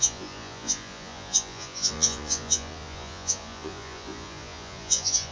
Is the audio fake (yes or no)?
yes